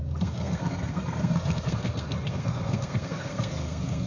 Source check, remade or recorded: remade